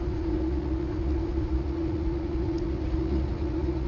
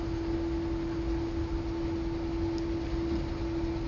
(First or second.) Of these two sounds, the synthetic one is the first